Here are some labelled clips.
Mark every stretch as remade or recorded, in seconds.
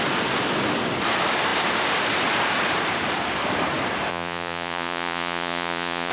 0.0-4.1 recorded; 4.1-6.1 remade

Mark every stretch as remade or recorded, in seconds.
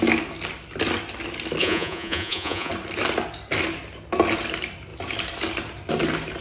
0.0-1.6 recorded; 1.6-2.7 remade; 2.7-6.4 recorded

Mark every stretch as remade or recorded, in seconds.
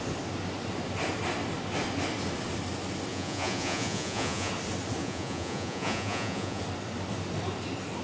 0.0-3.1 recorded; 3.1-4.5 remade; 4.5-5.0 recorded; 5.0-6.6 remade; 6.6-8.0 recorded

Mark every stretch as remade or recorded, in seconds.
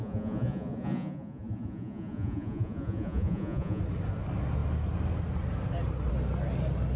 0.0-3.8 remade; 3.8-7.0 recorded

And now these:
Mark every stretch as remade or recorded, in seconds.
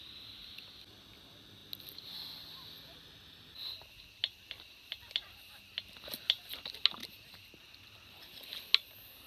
0.0-9.3 recorded